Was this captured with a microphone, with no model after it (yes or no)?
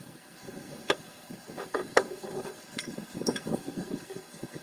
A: no